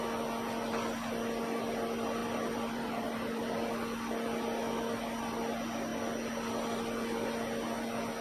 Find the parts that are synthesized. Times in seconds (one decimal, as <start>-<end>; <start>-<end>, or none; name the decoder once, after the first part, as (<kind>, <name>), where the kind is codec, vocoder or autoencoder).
2.2-3.7 (vocoder, BigVGAN v2)